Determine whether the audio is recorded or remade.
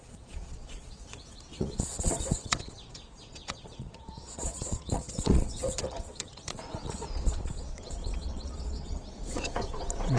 remade